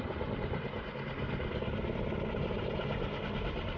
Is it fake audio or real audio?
real